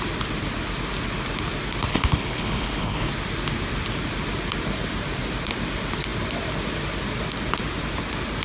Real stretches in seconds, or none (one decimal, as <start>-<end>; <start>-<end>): 0.0-1.9; 3.1-8.4